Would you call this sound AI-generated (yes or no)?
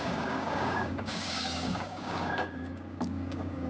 yes